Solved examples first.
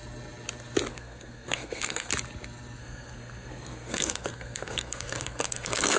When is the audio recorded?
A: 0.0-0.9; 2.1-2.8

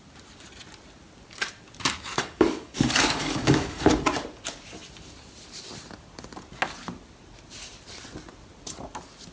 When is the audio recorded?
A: 0.0-2.1; 3.9-9.3

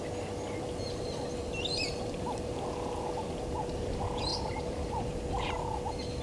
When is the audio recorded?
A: 0.0-4.3; 5.2-6.2

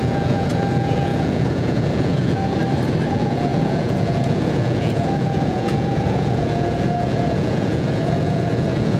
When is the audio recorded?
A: 2.6-3.1

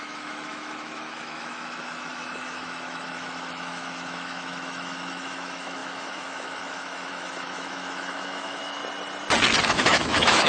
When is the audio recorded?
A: 8.8-9.6

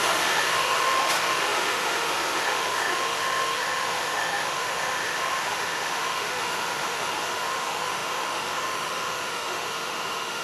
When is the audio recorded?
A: none